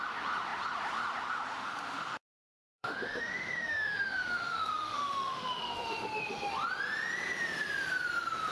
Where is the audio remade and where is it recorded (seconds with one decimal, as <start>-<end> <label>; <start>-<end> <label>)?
0.0-1.6 recorded; 1.6-6.5 remade; 6.5-8.5 recorded